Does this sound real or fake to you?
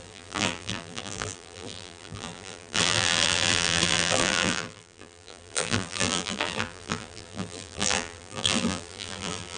fake